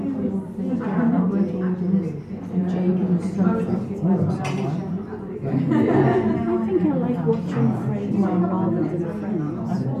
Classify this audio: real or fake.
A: real